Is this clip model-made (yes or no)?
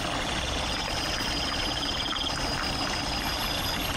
no